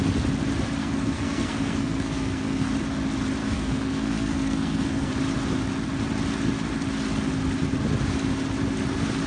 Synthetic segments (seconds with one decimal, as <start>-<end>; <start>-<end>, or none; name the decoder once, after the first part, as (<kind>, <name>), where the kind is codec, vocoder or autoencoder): 0.8-2.7 (codec, SNAC); 3.4-5.1